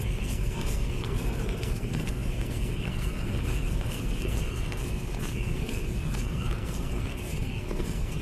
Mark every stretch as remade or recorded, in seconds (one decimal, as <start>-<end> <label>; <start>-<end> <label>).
0.0-8.2 remade